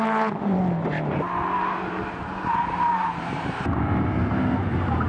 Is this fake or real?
fake